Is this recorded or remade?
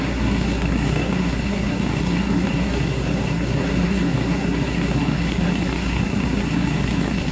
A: remade